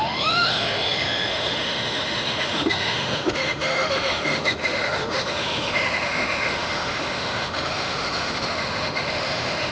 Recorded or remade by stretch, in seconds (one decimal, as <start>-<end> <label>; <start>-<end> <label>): 0.0-9.7 remade